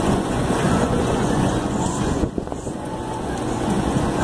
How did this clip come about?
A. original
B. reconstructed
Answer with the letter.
B